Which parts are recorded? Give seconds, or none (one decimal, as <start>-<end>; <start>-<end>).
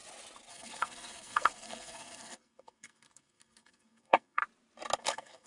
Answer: 0.0-0.5; 4.4-5.0